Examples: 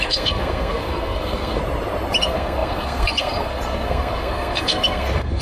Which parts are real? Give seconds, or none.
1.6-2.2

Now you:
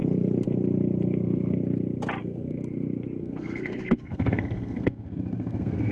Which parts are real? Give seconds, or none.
0.0-2.2; 2.6-3.2

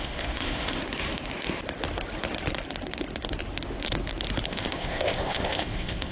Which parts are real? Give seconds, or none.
0.8-4.5

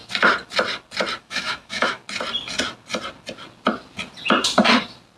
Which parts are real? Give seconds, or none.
0.0-1.2; 2.0-5.2

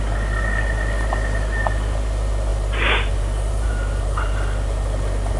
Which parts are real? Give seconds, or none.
0.0-5.4

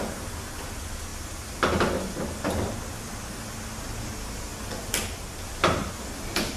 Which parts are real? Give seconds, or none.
0.0-6.6

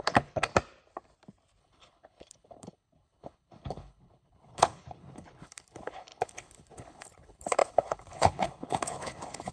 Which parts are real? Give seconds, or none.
0.5-1.6

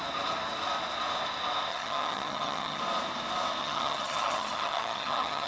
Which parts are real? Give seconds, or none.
0.0-1.7; 2.8-3.6